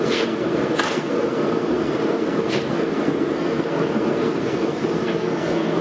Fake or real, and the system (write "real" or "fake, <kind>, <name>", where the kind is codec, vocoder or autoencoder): fake, codec, SNAC